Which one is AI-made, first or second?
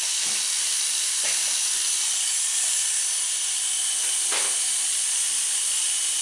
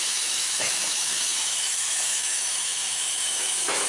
second